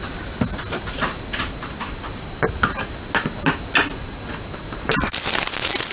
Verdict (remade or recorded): recorded